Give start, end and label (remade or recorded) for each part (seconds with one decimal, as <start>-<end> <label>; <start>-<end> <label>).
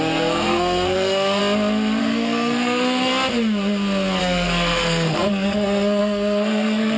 0.0-1.4 remade; 1.4-2.0 recorded; 2.0-3.1 remade; 3.1-4.2 recorded; 4.2-7.0 remade